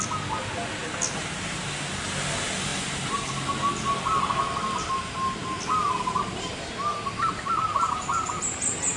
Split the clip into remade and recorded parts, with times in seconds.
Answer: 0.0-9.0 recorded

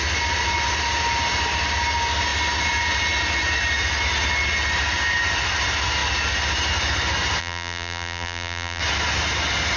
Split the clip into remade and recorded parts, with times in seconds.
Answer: 0.0-7.4 recorded; 7.4-8.8 remade; 8.8-9.8 recorded

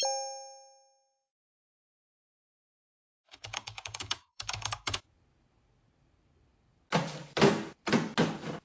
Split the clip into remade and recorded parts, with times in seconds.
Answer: 0.0-1.4 recorded; 1.4-5.0 remade; 5.0-8.6 recorded

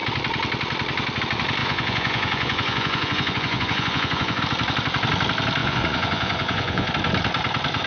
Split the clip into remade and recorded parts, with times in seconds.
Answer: 0.0-1.6 recorded; 1.6-4.4 remade; 4.4-5.6 recorded; 5.6-6.9 remade; 6.9-7.9 recorded